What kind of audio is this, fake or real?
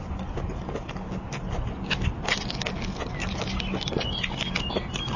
real